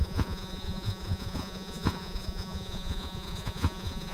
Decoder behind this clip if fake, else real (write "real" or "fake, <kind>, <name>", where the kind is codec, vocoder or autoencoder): fake, vocoder, Vocos